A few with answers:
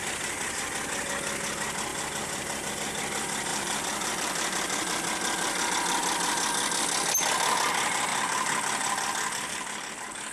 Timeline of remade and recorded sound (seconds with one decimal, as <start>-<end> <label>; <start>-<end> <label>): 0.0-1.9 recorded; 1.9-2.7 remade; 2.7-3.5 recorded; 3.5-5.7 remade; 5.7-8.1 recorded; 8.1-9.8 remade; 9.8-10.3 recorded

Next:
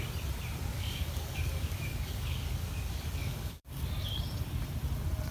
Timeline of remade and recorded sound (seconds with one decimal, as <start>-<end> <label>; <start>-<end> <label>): 0.0-0.7 recorded; 0.7-3.8 remade; 3.8-5.3 recorded

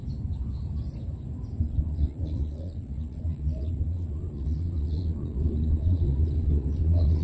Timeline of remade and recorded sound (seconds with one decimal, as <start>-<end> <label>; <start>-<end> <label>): 0.0-1.6 recorded; 1.6-7.2 remade